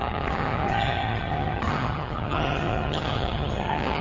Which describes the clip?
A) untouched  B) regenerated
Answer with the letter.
B